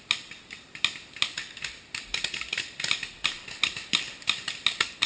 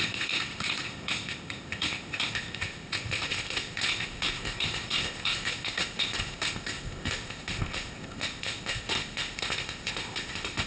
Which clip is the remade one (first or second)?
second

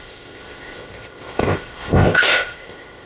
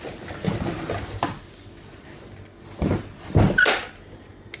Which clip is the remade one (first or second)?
first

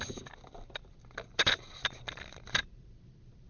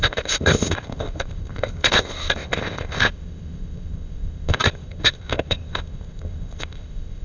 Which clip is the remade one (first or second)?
second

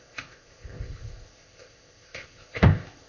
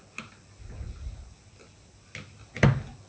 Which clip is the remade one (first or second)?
first